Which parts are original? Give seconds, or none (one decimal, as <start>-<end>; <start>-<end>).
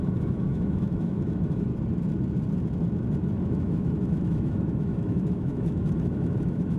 1.7-3.5